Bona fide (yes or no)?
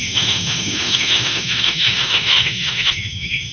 no